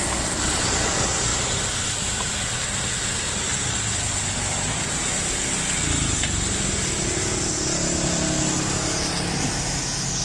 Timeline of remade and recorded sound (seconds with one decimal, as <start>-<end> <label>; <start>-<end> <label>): 0.0-10.2 recorded